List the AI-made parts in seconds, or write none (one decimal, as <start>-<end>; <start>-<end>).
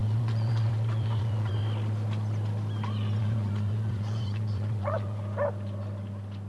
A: 0.0-1.6; 3.2-5.2